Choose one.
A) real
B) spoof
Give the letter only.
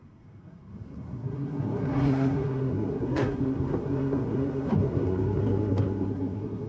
B